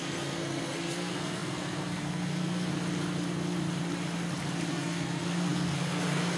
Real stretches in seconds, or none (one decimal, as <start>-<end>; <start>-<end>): 2.7-4.7